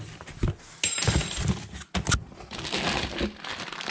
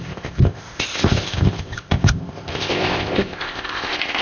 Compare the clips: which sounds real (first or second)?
first